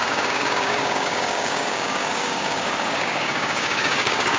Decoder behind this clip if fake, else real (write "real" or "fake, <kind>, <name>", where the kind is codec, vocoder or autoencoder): fake, codec, DAC